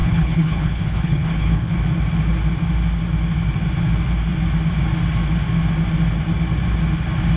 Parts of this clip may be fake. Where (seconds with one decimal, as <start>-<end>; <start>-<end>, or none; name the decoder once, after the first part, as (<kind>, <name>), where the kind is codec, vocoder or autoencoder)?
0.0-1.7 (codec, HILCodec)

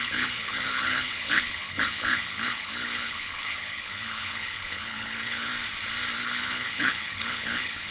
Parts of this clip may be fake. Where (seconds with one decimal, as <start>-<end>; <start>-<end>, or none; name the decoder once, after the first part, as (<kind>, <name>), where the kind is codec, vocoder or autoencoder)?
0.0-5.5 (codec, HILCodec); 6.2-7.9